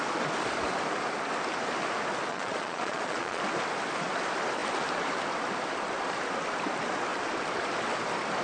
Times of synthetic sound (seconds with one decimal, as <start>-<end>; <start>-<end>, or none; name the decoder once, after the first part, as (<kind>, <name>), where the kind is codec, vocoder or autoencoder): 2.3-3.4 (vocoder, Vocos)